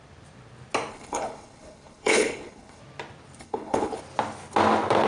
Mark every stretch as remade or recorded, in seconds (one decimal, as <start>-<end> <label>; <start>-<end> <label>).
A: 0.0-0.9 recorded; 0.9-2.8 remade; 2.8-3.4 recorded; 3.4-4.0 remade; 4.0-5.1 recorded